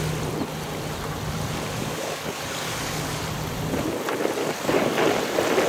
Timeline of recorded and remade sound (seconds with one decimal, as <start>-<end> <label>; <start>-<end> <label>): 0.0-1.8 recorded; 1.8-3.2 remade; 3.2-4.4 recorded; 4.4-5.0 remade; 5.0-5.7 recorded